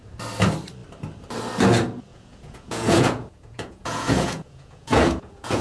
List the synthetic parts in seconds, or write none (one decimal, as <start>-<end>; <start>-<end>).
2.1-5.6